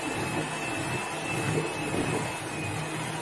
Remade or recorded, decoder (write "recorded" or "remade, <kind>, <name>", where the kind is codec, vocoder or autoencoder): recorded